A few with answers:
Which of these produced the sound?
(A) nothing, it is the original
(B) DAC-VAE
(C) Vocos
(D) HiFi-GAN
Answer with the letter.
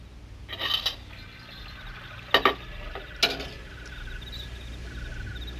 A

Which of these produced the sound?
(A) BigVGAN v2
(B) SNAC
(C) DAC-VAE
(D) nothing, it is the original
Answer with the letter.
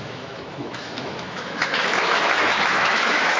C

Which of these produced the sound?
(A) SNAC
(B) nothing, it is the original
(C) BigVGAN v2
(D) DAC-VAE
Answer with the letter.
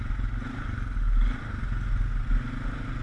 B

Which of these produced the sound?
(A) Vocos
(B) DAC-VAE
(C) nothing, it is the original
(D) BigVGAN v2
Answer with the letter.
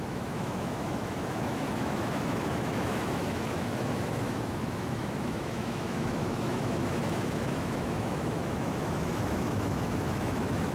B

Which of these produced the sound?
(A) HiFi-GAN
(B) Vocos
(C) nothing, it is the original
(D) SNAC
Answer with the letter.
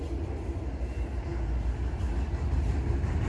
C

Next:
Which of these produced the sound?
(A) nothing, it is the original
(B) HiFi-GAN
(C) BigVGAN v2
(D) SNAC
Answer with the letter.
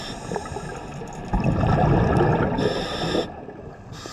A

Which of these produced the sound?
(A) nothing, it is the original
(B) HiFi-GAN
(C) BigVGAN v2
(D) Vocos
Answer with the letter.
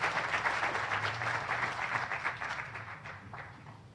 C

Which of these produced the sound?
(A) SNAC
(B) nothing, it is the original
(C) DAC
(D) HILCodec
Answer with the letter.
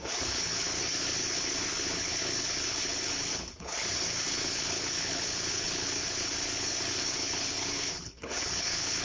D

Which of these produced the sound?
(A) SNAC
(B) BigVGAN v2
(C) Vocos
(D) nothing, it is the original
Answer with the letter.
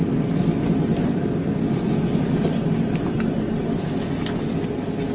D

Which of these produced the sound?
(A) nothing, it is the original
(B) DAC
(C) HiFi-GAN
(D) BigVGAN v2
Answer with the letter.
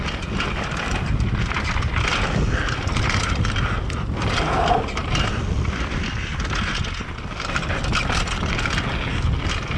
A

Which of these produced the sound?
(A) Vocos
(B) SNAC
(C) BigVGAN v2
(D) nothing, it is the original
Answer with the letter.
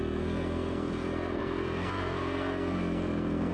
B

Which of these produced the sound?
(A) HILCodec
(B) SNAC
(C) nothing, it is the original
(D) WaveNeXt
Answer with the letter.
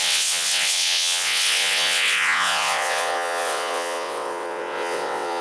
D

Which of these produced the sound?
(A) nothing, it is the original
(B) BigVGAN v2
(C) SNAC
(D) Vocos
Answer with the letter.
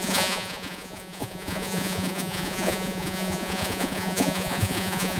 D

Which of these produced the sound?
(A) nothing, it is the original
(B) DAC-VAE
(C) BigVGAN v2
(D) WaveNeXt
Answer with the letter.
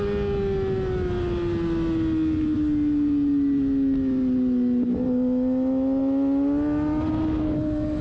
A